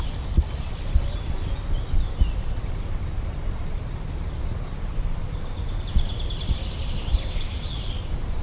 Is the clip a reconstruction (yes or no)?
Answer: no